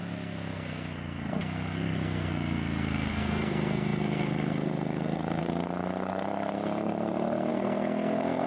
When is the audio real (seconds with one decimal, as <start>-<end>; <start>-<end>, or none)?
none